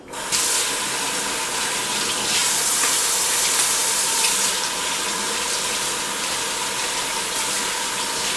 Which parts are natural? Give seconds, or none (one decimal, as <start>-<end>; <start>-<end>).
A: 0.0-2.4; 5.4-8.4

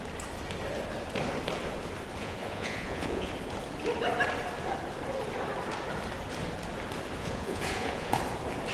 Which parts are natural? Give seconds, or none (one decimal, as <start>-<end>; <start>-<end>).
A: 0.0-2.2; 3.3-7.2; 8.2-8.7

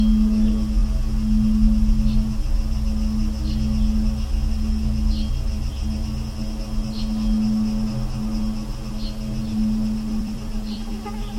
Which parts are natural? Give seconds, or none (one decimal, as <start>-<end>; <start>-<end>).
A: 0.0-10.1; 10.9-11.4

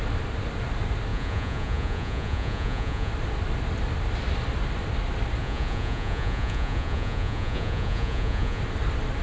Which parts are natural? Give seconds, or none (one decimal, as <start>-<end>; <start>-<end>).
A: 0.0-1.1; 3.1-5.4; 8.6-9.2

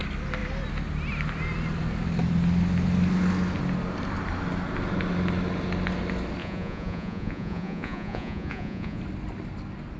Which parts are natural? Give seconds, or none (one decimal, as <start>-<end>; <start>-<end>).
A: 0.0-6.4; 9.0-10.0